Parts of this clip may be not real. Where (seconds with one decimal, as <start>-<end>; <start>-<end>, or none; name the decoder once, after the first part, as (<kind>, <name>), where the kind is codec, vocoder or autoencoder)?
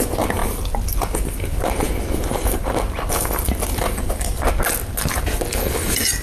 none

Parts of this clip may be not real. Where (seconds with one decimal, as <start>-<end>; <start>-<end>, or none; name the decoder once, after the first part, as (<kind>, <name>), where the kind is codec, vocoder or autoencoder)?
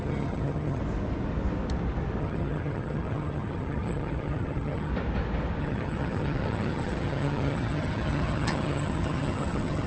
0.0-0.8 (vocoder, HiFi-GAN); 2.2-4.9; 5.6-9.9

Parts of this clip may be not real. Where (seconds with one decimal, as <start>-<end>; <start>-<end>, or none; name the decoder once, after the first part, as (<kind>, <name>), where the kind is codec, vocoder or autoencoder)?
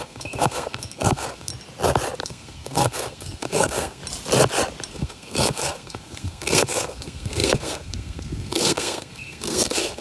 0.0-1.5 (codec, SNAC); 2.2-4.0; 4.9-10.0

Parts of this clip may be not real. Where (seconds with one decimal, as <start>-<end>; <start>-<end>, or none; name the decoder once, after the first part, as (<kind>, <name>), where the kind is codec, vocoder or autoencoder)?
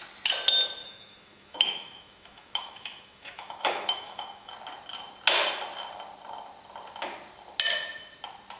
0.8-4.5 (autoencoder, DAC-VAE)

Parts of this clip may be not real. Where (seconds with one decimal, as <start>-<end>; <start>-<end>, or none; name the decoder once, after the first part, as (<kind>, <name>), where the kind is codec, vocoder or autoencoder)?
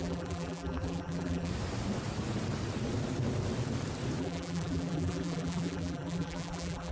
0.0-1.5 (vocoder, BigVGAN v2); 4.2-6.9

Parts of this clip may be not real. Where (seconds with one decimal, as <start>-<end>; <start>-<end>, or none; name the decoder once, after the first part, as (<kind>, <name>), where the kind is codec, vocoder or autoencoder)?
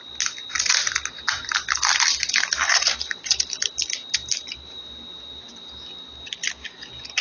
0.5-4.8 (vocoder, BigVGAN v2)